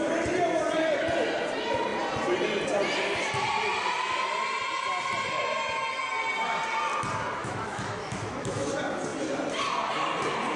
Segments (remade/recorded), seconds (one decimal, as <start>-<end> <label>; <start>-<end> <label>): 0.0-7.4 recorded; 7.4-8.7 remade; 8.7-10.6 recorded